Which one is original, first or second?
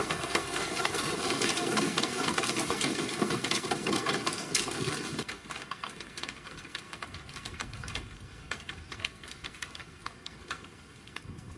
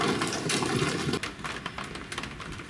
second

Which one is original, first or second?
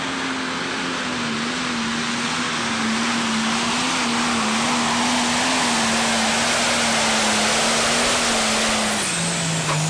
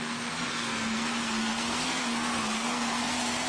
first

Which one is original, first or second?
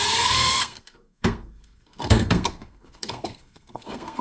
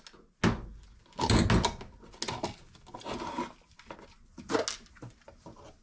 second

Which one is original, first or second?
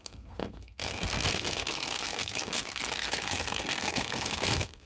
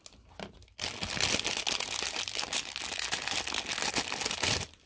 second